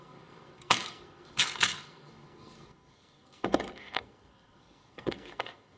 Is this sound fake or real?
fake